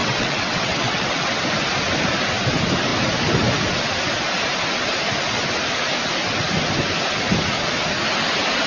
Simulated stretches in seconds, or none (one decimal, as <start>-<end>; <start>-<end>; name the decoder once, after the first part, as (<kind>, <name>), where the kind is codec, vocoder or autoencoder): 0.0-1.4 (vocoder, WaveNeXt)